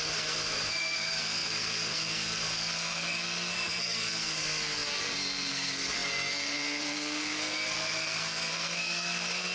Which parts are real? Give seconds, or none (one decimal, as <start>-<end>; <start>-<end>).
none